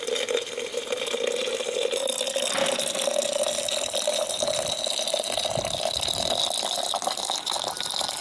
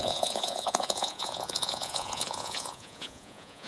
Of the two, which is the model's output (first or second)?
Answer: second